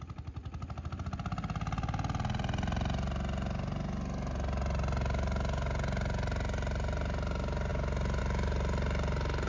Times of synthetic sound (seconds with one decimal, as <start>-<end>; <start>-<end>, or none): none

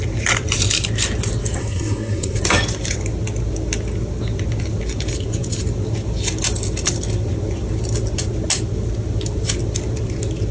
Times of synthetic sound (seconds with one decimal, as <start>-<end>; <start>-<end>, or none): 1.6-2.4

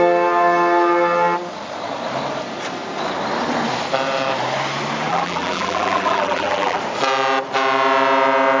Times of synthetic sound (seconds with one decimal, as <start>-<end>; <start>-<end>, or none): 5.1-6.8

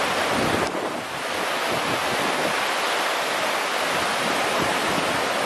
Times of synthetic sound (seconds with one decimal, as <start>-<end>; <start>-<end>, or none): none